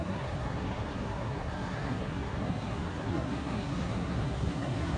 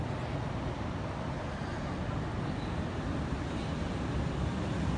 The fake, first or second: first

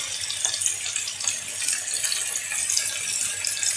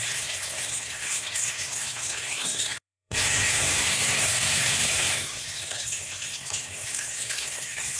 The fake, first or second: second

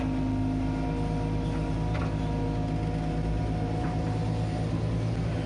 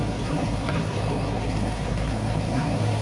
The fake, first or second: second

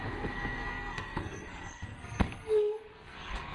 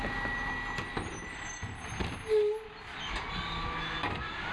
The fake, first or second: first